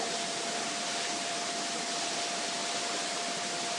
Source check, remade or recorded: remade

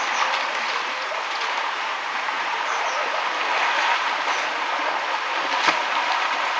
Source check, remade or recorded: recorded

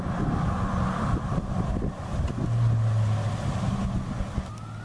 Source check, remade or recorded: recorded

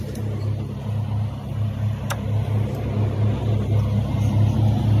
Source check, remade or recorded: recorded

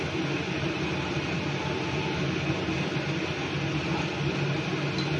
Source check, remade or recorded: recorded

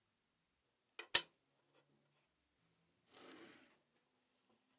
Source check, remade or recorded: recorded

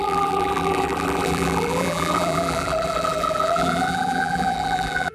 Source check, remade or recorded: remade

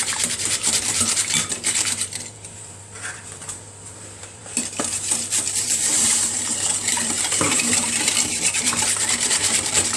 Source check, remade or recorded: remade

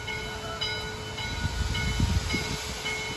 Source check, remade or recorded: recorded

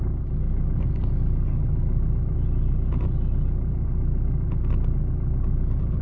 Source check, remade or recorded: recorded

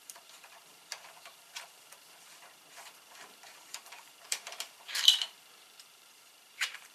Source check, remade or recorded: remade